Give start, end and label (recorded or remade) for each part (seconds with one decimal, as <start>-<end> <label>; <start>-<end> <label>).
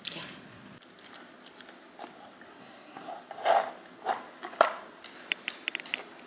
0.0-2.6 recorded; 2.6-3.1 remade; 3.1-6.3 recorded